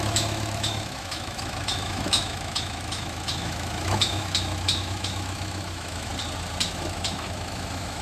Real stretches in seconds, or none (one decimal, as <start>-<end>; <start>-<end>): 6.1-6.7